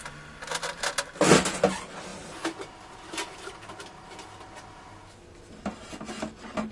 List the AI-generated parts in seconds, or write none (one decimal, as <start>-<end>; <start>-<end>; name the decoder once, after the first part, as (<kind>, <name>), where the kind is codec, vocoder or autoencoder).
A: none

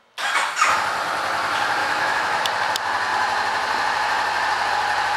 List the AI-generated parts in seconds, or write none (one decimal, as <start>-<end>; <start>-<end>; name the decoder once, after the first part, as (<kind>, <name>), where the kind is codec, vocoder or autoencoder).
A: 1.8-2.4 (autoencoder, DAC-VAE)

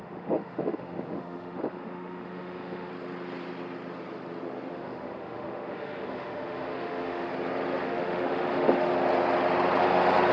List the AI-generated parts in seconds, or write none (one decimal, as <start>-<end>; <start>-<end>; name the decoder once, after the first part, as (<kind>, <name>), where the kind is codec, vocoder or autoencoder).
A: 0.0-2.9 (autoencoder, DAC-VAE); 4.7-7.3; 7.8-8.9

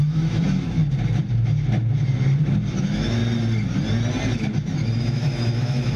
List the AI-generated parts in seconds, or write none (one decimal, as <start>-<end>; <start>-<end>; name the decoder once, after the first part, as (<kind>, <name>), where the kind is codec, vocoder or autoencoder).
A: 0.0-0.8 (autoencoder, DAC-VAE); 2.8-3.2; 5.0-6.0

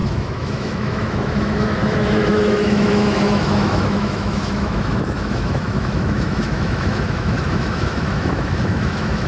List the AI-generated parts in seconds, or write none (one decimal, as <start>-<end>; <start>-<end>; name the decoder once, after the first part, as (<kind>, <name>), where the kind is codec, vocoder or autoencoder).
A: 0.0-9.3 (autoencoder, DAC-VAE)

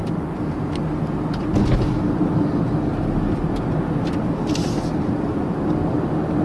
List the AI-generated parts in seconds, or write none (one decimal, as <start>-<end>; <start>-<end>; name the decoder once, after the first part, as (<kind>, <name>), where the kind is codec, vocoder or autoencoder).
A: none

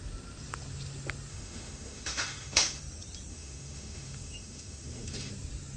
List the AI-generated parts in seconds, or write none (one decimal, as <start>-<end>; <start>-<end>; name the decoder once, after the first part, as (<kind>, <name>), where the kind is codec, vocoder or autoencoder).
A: 1.3-2.8 (autoencoder, DAC-VAE); 3.3-5.3